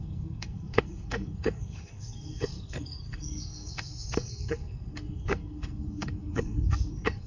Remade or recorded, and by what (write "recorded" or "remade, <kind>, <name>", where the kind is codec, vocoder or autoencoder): remade, codec, SNAC